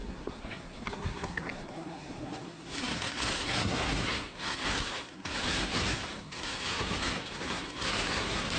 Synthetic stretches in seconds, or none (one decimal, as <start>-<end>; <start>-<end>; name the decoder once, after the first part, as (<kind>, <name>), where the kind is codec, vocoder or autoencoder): 0.0-8.6 (codec, SNAC)